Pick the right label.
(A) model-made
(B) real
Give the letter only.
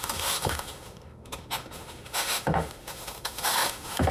A